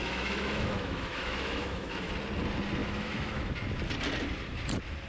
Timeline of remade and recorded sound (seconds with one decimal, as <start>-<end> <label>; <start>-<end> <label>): 0.0-2.1 remade; 2.1-2.8 recorded; 2.8-3.5 remade; 3.5-5.1 recorded